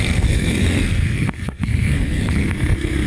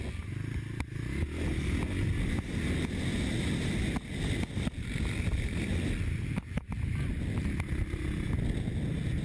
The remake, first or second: first